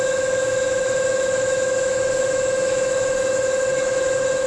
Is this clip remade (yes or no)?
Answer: yes